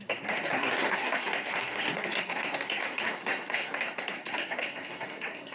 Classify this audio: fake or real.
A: fake